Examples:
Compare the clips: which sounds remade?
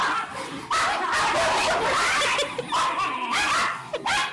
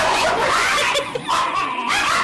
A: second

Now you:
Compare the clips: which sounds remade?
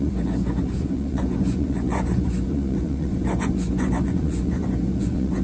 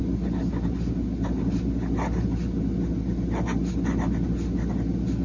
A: first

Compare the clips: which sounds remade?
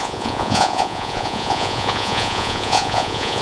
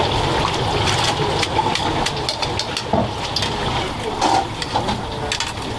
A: first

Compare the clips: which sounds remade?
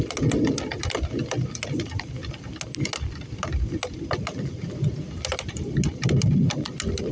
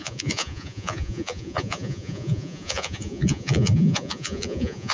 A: second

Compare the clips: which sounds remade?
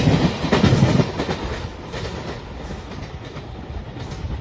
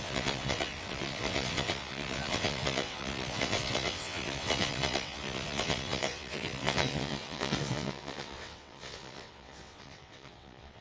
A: second